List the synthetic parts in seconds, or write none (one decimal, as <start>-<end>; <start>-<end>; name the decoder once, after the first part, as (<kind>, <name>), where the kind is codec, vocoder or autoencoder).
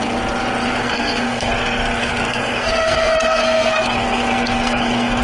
0.8-1.5 (codec, SNAC); 2.0-5.2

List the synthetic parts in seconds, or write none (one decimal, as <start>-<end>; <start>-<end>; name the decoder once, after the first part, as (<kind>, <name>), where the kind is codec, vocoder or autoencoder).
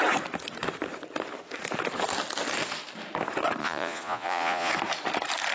3.6-4.7 (vocoder, Vocos)